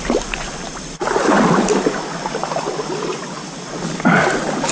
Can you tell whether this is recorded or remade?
recorded